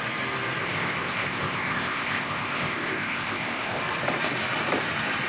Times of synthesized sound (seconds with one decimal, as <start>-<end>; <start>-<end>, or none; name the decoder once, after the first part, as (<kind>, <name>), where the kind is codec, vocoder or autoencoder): 0.6-3.8 (codec, ZipCodec)